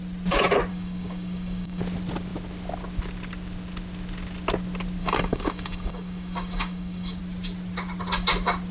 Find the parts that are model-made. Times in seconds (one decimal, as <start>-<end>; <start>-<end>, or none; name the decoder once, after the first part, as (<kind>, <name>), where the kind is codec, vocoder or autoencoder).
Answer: 0.7-1.8 (codec, DAC); 5.0-7.2